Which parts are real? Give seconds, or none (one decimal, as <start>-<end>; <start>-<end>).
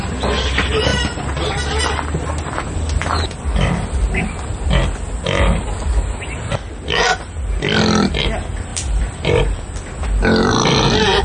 0.0-8.7; 9.4-11.2